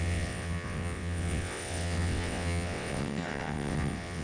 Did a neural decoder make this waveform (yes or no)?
yes